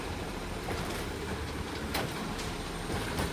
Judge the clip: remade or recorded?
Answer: remade